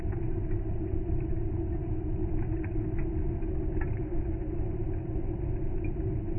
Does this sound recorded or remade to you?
recorded